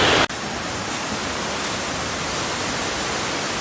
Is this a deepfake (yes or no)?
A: no